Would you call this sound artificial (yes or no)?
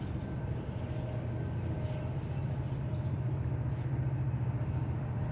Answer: no